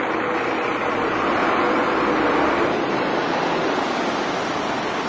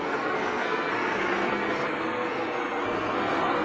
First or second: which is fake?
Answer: second